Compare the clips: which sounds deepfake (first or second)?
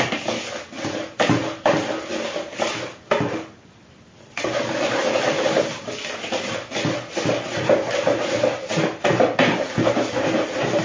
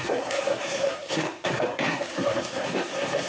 second